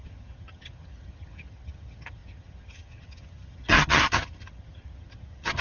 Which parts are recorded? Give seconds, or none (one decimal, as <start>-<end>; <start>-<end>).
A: none